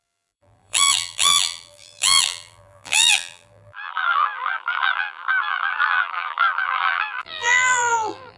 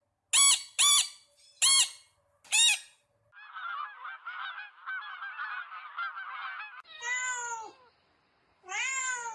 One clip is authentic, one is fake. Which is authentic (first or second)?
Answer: second